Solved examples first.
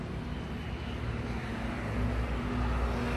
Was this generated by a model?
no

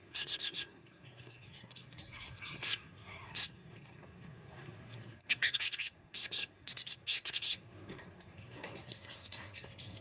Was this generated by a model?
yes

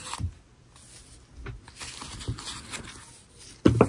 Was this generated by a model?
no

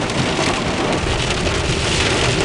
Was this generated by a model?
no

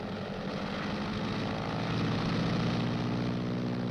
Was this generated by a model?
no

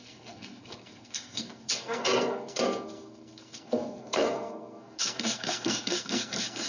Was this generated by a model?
yes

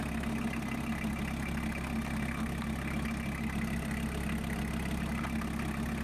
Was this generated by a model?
no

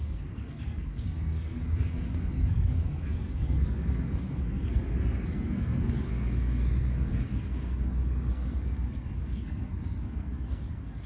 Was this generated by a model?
yes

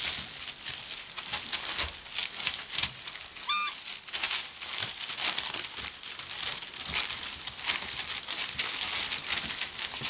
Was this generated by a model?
no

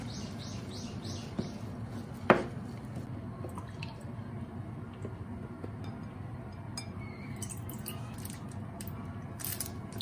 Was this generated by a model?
no